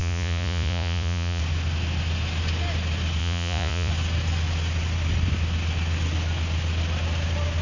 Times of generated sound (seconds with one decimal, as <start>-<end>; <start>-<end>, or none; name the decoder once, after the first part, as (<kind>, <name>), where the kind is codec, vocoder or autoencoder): 0.0-1.4 (vocoder, Vocos); 3.2-3.9